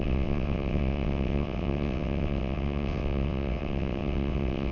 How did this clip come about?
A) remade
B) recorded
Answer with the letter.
A